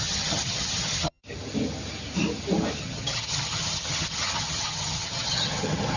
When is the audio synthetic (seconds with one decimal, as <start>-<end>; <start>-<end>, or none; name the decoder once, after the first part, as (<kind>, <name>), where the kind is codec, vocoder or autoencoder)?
0.0-1.2 (vocoder, HiFi-GAN); 2.8-6.0